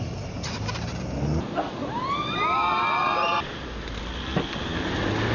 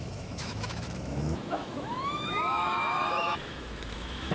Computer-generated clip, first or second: second